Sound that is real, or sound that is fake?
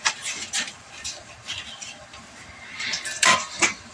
fake